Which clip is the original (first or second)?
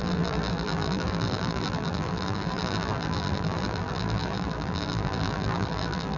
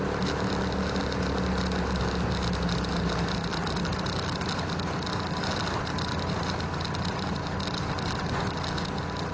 second